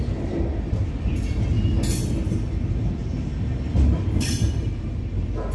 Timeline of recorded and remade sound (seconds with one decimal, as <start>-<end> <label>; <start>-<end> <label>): 0.0-3.0 remade; 3.0-3.7 recorded; 3.7-5.5 remade